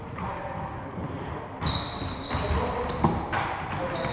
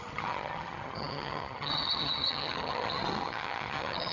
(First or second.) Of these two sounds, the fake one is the second